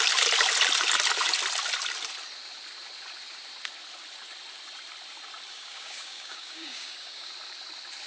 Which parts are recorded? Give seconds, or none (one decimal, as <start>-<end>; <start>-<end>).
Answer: 0.0-5.5; 7.3-8.1